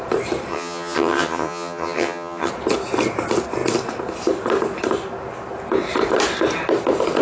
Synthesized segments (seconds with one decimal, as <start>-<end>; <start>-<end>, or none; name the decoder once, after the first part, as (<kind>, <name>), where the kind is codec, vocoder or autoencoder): 0.5-2.5 (vocoder, HiFi-GAN)

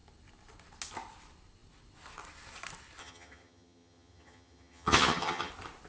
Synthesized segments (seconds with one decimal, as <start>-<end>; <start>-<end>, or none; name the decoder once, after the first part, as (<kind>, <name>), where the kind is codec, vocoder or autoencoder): 3.0-5.5 (vocoder, HiFi-GAN)

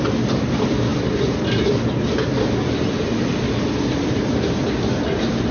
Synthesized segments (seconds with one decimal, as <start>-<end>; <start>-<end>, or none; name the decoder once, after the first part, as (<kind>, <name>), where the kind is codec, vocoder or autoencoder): none